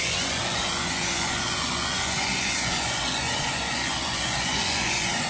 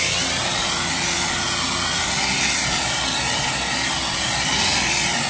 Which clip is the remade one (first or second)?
first